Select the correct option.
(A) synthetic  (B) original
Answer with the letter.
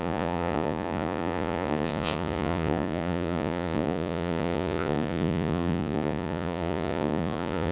A